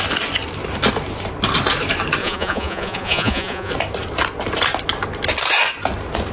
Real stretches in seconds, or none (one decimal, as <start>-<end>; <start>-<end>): 0.0-2.2; 3.7-6.3